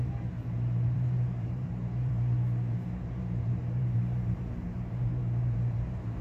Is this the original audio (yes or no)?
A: no